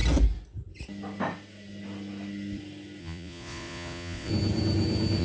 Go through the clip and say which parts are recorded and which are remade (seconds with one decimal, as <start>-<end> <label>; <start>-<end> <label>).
0.0-3.0 recorded; 3.0-4.3 remade; 4.3-5.2 recorded